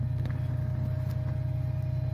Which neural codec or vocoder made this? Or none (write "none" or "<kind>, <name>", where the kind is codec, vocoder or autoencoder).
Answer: none